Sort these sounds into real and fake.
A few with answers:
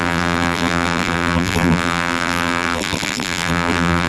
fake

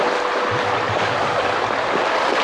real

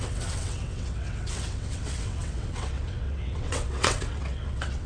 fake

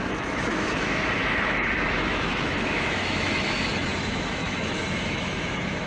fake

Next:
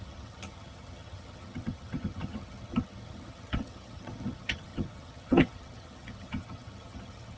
fake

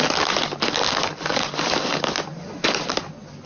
real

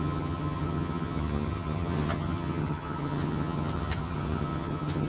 fake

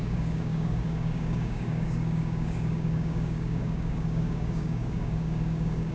fake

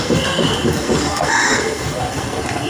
fake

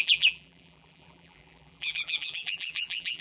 fake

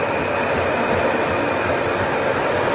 real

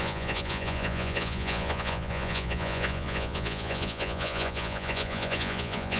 fake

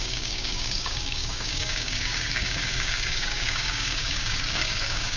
fake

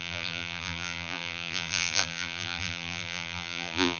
fake